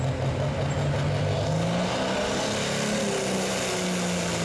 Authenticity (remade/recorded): recorded